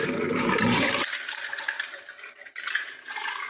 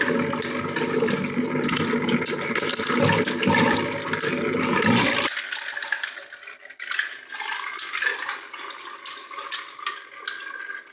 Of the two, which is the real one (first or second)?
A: second